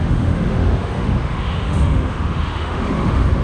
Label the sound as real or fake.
fake